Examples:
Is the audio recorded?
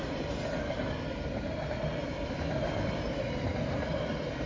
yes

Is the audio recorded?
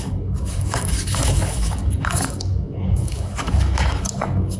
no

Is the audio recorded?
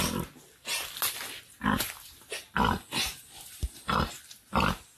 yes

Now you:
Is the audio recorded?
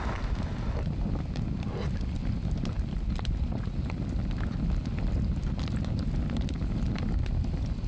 yes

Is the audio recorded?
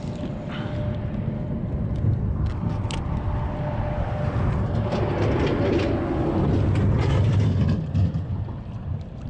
yes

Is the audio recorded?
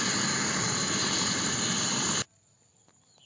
yes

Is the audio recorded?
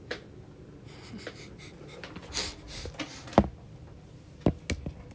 yes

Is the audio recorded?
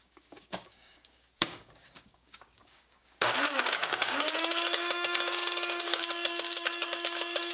no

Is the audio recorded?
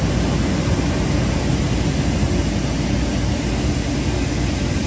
yes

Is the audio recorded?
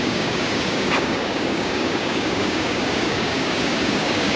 no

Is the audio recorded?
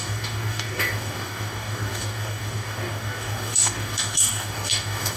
no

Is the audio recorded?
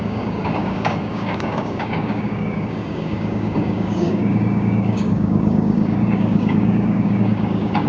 no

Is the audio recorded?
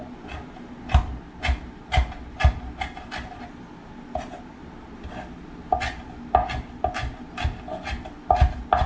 yes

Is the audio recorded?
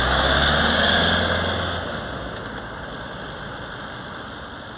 yes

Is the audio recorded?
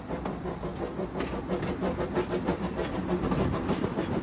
yes